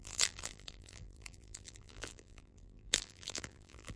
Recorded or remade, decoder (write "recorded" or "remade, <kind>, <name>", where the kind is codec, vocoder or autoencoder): remade, vocoder, BigVGAN v2